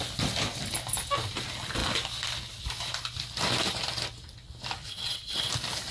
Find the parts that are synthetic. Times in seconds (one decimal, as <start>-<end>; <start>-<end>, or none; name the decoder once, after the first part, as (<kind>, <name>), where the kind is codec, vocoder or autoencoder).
4.9-5.5 (vocoder, WaveNeXt)